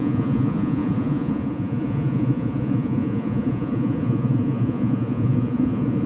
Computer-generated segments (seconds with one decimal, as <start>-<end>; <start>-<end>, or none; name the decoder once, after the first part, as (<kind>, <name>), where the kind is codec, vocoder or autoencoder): 0.0-6.1 (vocoder, Vocos)